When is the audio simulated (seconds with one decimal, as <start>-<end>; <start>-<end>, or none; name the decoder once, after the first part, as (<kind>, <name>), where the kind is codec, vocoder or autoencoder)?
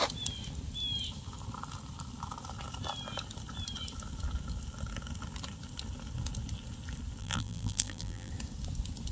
7.2-8.3 (vocoder, BigVGAN v2)